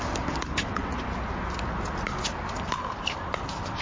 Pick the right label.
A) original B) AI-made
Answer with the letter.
A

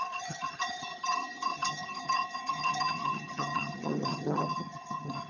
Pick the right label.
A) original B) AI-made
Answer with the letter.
B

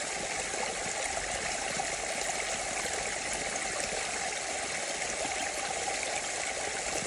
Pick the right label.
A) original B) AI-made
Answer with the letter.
A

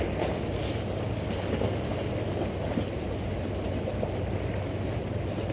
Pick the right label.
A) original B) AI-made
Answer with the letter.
A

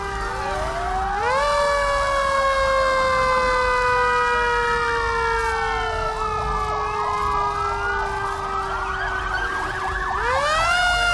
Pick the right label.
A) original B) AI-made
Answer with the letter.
A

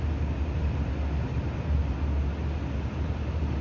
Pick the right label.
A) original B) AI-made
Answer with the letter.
A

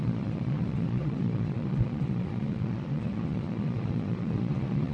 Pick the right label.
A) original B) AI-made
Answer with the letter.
B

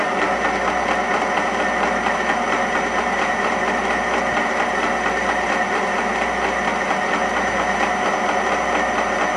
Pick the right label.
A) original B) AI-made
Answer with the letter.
A